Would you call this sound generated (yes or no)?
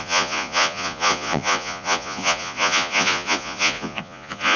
yes